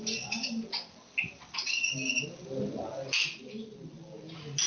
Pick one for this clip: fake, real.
real